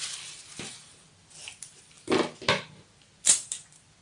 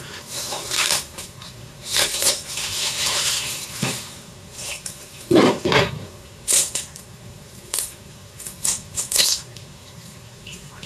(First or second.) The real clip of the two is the first